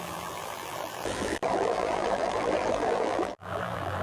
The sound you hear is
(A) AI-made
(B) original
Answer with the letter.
A